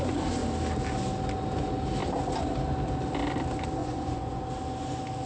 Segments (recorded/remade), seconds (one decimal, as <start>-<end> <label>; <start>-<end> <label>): 0.0-3.8 recorded; 3.8-4.4 remade; 4.4-5.3 recorded